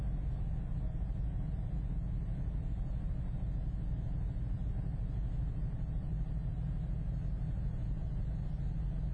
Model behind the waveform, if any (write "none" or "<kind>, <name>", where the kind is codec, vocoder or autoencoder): none